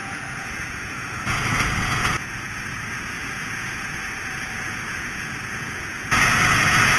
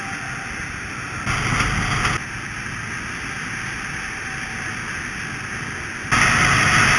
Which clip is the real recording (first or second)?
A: second